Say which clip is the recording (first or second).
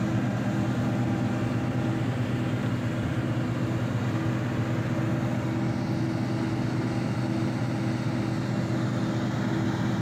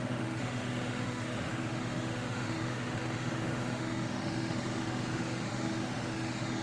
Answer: first